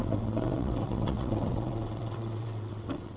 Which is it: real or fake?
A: fake